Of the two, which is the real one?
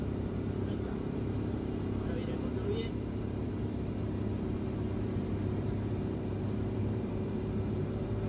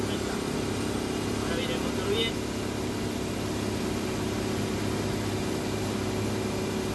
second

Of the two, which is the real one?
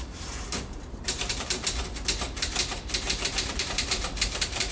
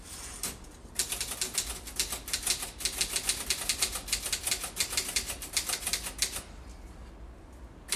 second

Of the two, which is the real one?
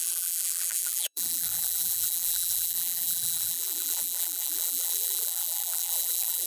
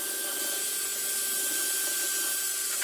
second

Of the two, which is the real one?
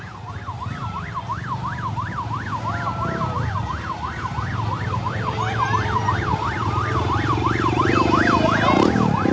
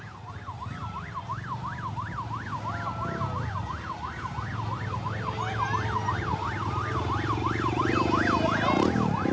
second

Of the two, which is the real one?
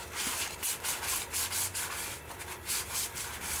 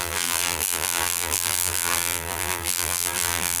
first